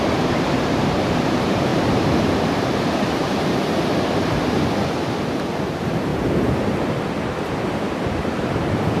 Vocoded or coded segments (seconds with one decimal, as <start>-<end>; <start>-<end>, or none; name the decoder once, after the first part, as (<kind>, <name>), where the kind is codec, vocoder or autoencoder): 0.0-3.6 (vocoder, BigVGAN v2); 4.9-6.1; 7.4-9.0